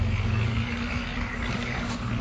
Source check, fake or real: fake